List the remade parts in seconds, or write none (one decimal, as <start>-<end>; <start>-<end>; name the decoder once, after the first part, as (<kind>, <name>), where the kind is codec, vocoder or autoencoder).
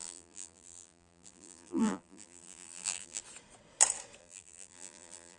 0.0-3.2 (vocoder, BigVGAN v2); 4.2-5.4